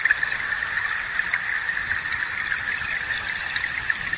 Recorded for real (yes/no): yes